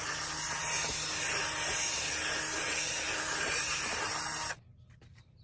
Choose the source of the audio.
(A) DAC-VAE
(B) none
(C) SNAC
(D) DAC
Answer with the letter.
B